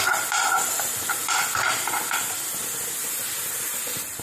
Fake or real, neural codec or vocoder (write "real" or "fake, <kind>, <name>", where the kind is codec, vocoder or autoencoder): real